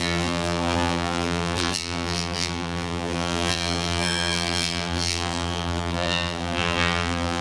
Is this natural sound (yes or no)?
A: no